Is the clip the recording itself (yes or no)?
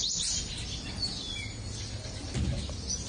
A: yes